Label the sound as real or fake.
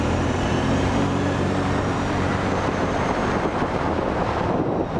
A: fake